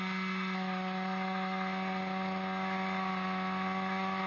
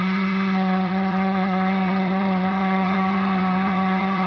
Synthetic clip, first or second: second